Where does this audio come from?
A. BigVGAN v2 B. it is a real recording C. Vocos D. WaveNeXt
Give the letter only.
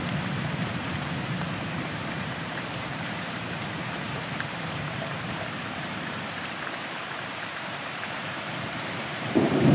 A